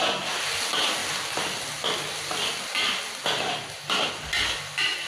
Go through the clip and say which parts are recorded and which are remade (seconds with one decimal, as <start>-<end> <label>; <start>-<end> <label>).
0.0-5.1 recorded